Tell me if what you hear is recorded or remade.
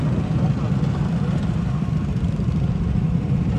recorded